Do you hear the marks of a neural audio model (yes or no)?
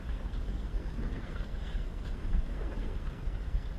yes